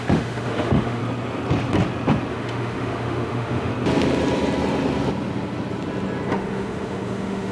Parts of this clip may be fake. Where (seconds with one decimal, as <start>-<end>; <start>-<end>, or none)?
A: 0.0-1.0; 2.3-3.7; 6.3-7.5